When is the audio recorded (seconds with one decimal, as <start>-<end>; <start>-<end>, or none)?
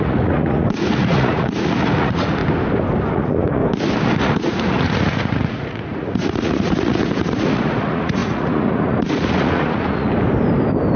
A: 2.4-3.1; 3.6-4.2; 10.1-11.0